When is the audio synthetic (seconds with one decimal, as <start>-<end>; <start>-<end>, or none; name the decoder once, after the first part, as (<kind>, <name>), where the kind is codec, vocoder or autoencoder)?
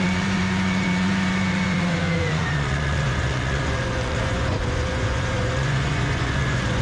0.0-6.8 (vocoder, Vocos)